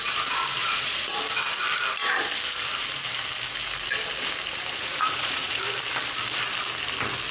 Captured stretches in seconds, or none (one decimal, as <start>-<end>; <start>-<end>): 0.0-0.6; 1.1-4.8; 5.6-7.3